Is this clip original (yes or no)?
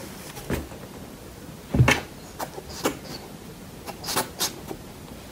yes